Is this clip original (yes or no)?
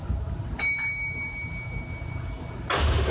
yes